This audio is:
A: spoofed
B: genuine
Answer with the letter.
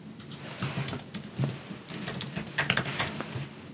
B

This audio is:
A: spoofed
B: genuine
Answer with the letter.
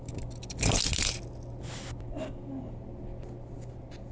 B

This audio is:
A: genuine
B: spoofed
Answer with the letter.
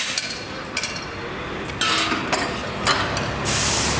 A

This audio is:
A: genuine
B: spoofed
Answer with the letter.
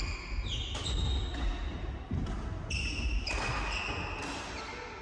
A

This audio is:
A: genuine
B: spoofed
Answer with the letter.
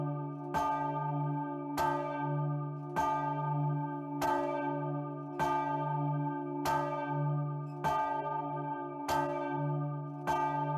A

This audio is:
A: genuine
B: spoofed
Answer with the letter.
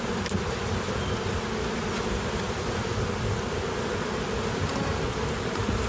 A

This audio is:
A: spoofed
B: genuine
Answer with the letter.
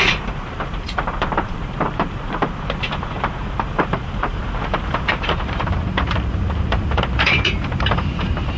A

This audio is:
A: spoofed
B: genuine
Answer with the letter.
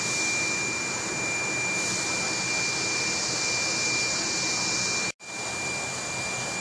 B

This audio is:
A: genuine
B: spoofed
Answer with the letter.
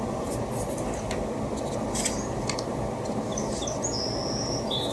A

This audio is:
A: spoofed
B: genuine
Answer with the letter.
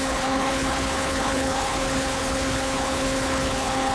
A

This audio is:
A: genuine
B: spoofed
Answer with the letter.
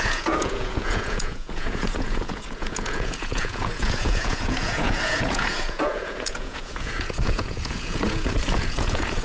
B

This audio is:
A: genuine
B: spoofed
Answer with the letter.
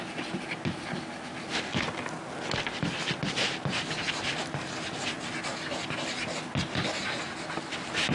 A